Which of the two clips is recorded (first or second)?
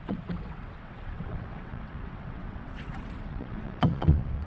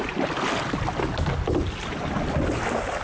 second